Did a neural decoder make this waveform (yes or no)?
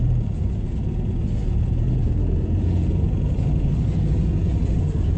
yes